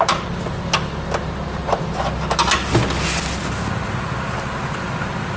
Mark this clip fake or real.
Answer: real